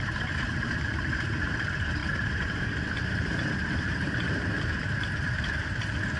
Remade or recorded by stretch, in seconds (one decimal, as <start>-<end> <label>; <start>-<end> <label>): 0.0-6.2 remade